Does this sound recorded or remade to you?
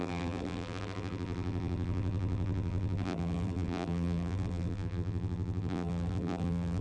remade